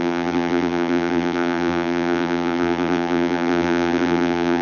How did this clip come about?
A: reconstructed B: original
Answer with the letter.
A